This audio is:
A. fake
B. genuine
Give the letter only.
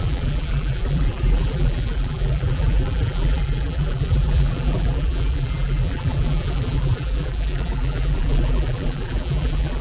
A